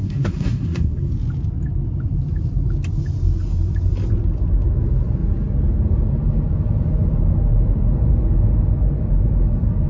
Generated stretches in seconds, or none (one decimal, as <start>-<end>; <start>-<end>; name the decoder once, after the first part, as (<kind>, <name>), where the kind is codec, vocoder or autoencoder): 0.0-1.1 (codec, SNAC)